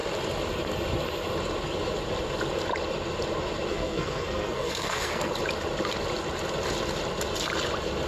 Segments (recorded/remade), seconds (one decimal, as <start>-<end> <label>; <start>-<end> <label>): 0.0-3.7 recorded; 3.7-5.3 remade; 5.3-8.1 recorded